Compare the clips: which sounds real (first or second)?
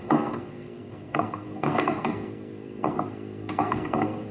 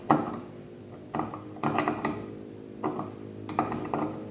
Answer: second